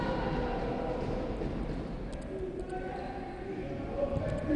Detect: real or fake real